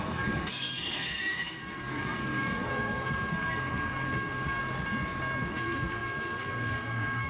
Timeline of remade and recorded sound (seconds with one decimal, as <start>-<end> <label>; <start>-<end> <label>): 0.0-4.6 remade; 4.6-5.5 recorded; 5.5-7.3 remade